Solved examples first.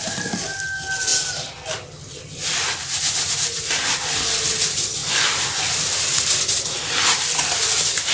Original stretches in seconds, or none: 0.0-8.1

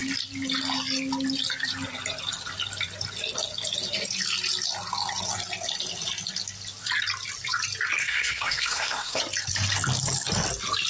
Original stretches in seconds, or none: 0.0-8.0; 9.2-10.9

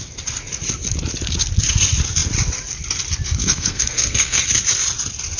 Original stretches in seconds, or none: 0.0-3.4; 4.4-5.4

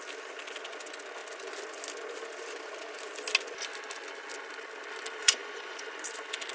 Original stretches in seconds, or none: 0.0-5.2; 5.8-6.5

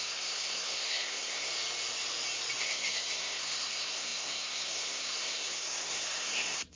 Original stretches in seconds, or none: 1.5-2.6